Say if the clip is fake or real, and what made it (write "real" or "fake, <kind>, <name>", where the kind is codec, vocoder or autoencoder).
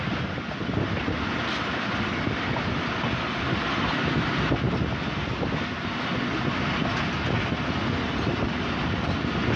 real